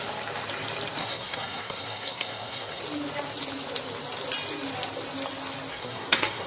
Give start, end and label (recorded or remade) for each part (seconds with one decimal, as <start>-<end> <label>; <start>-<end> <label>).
0.0-1.0 recorded; 1.0-2.8 remade; 2.8-5.7 recorded; 5.7-6.5 remade